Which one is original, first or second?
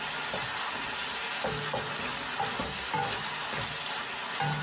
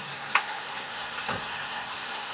first